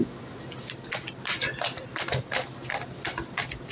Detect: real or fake real